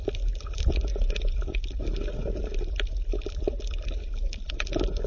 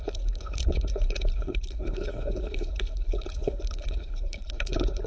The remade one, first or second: second